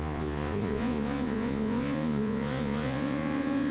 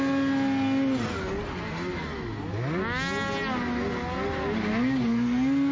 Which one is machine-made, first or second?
first